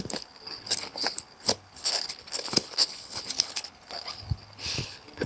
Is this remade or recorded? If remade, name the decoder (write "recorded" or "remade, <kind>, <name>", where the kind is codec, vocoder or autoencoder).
remade, codec, HILCodec